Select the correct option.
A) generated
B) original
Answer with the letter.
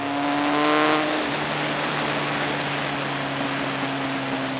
B